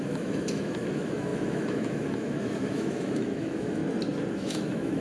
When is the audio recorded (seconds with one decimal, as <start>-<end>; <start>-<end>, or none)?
3.8-4.3

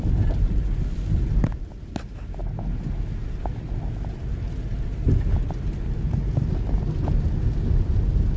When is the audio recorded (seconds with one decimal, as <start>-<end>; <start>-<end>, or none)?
0.0-8.4

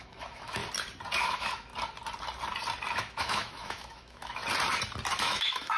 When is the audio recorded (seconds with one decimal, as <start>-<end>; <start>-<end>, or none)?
0.6-1.2; 1.7-2.9; 4.4-5.2

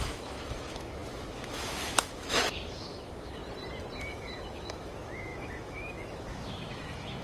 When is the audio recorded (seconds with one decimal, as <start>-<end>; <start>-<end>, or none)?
3.4-4.0

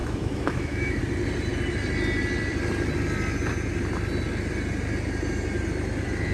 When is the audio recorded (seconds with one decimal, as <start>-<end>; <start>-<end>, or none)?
1.0-6.3

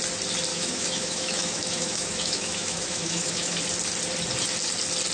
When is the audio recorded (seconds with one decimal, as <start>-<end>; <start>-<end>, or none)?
0.0-0.5; 3.6-5.1

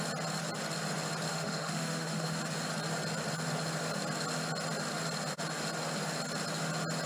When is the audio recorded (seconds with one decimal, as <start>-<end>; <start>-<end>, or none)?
0.0-1.3; 2.4-7.1